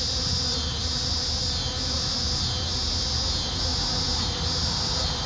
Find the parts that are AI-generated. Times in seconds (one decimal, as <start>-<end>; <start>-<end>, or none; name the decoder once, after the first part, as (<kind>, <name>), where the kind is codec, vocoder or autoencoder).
none